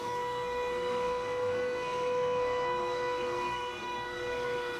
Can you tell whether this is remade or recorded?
remade